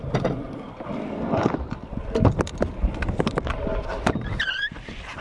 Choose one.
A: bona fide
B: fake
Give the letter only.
A